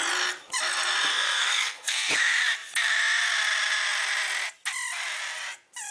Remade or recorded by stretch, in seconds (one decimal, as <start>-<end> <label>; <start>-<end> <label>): 0.0-1.1 recorded; 1.1-2.1 remade; 2.1-5.9 recorded